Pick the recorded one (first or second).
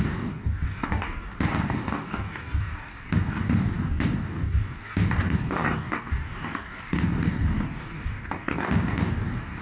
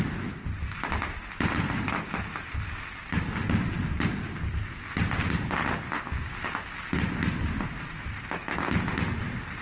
second